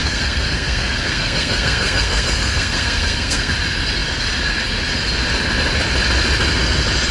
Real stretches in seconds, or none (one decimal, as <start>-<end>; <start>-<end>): 3.5-7.1